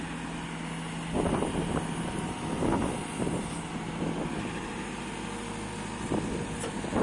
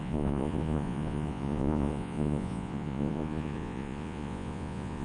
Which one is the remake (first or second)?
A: second